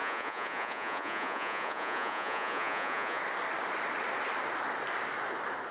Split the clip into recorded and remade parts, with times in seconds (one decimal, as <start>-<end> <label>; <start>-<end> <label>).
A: 0.0-3.2 remade; 3.2-5.7 recorded